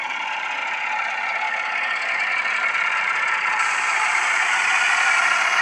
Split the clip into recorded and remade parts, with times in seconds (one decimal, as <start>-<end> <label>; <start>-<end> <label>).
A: 0.0-5.6 recorded